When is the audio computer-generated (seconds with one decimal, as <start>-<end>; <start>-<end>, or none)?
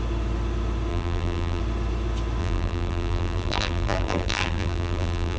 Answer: 0.9-1.6; 2.4-5.4